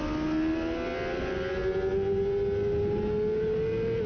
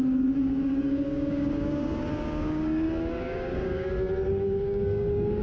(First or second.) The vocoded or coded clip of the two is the second